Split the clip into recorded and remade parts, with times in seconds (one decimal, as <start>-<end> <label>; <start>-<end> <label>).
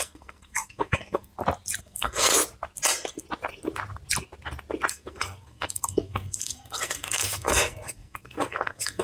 0.0-1.3 remade; 1.3-1.8 recorded; 1.8-2.3 remade; 2.3-4.9 recorded; 4.9-9.0 remade